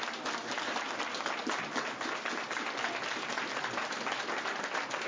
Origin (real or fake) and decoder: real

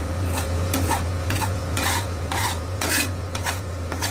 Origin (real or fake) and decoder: fake, vocoder, Vocos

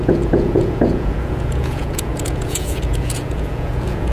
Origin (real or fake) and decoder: fake, vocoder, Vocos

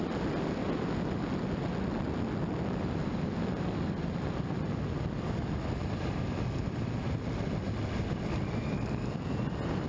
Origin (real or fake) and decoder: real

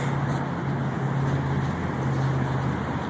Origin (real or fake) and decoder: real